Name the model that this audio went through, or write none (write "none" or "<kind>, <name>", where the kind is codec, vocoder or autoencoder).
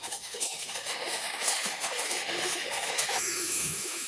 autoencoder, DAC-VAE